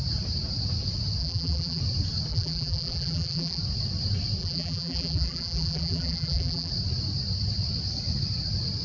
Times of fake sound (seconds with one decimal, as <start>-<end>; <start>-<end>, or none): 1.2-1.8; 2.3-3.6; 4.4-6.7